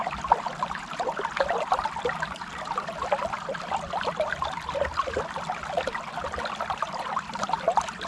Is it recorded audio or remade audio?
recorded